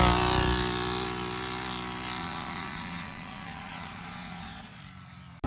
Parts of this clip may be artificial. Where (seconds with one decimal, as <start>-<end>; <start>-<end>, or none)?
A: 2.2-4.8